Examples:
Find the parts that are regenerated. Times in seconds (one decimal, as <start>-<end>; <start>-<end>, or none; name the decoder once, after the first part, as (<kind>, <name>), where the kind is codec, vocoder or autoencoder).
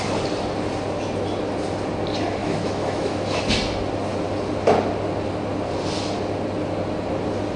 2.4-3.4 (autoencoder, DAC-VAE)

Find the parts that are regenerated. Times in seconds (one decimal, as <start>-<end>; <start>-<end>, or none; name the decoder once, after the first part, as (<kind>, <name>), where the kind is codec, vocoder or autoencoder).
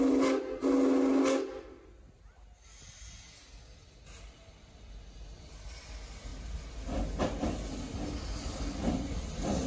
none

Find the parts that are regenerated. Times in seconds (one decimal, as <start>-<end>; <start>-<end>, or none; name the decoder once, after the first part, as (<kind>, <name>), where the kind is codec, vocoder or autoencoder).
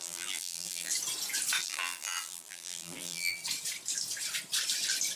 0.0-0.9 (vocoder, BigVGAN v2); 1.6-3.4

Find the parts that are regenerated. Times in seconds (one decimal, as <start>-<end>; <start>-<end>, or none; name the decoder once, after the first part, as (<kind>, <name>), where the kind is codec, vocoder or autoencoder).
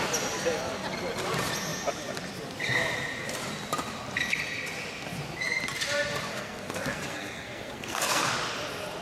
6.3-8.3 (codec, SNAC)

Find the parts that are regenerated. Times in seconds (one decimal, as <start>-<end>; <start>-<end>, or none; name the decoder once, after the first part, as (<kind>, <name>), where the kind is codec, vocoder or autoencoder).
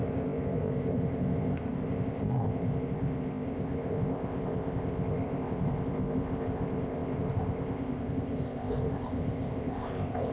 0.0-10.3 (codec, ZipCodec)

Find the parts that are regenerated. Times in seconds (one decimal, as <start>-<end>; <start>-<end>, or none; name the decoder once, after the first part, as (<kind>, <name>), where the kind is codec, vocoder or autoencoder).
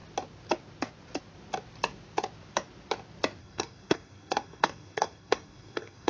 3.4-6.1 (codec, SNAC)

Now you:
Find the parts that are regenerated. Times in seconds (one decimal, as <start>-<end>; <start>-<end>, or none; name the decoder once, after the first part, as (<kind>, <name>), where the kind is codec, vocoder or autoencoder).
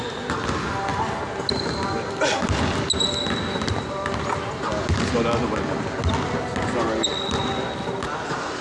none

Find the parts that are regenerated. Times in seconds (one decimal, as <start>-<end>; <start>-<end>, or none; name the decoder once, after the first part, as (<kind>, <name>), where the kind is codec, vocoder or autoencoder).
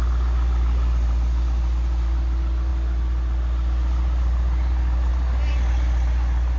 none